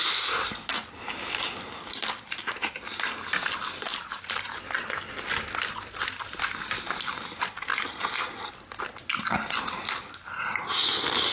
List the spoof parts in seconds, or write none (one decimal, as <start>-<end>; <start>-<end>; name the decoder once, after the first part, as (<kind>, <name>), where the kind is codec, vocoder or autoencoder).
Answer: 3.9-4.6 (vocoder, BigVGAN v2)